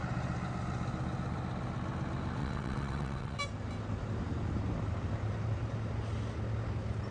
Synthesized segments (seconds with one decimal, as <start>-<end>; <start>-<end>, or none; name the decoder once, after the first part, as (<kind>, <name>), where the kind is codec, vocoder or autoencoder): 2.4-3.4 (vocoder, WaveNeXt)